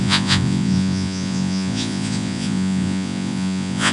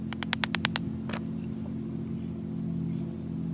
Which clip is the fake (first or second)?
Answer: first